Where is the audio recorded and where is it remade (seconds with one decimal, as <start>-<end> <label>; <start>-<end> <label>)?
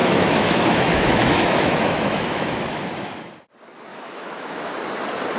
0.0-3.2 remade; 3.2-3.9 recorded; 3.9-4.7 remade; 4.7-5.4 recorded